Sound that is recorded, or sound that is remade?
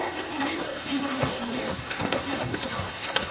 remade